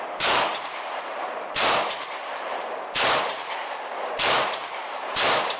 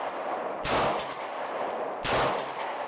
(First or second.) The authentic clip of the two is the second